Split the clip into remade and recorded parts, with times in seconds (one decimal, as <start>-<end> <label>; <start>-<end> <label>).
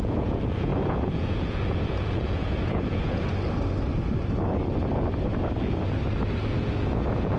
0.0-3.3 remade; 3.3-6.6 recorded; 6.6-7.4 remade